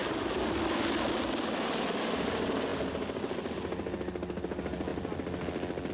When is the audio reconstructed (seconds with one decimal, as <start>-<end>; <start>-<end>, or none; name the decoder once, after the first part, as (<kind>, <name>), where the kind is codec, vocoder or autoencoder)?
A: none